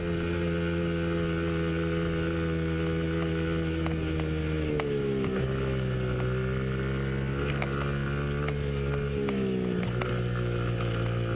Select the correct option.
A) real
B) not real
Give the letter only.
A